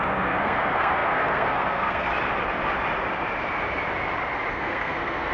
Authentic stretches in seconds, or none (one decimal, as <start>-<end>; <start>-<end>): 2.1-4.5